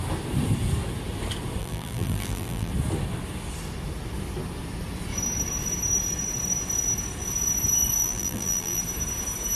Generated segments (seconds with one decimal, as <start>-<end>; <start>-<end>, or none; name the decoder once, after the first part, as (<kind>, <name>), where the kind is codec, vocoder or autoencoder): 1.6-2.7 (vocoder, BigVGAN v2); 8.0-8.8